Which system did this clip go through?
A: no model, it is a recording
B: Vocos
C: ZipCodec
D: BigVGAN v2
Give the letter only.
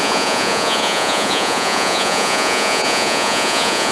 B